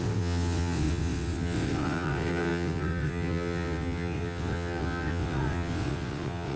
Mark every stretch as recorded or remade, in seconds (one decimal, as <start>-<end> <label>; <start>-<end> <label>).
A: 0.0-6.6 remade